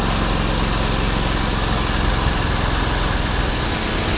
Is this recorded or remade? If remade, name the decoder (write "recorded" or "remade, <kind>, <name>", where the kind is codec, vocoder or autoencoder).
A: recorded